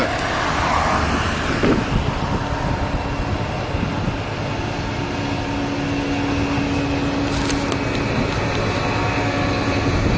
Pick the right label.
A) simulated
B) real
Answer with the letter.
B